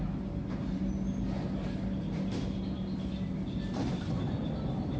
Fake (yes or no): no